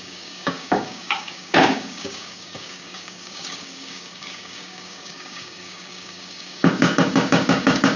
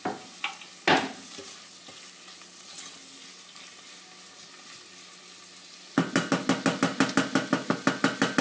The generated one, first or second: first